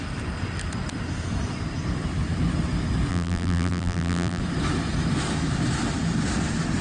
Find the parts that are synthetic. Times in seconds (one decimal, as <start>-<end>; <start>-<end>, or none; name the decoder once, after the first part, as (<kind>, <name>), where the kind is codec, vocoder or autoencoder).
3.1-4.4 (vocoder, BigVGAN v2)